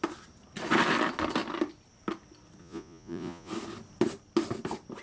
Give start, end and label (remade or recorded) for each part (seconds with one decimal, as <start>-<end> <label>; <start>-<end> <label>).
0.0-2.6 recorded; 2.6-3.5 remade; 3.5-5.0 recorded